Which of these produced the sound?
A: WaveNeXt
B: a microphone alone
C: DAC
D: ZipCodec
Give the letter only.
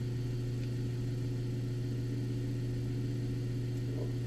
B